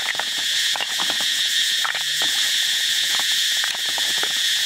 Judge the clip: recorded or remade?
remade